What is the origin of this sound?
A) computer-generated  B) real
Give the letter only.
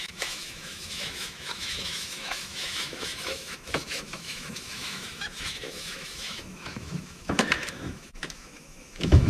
A